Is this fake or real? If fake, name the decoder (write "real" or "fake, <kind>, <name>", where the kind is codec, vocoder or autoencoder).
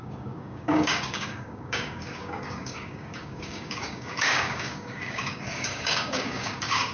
fake, codec, DAC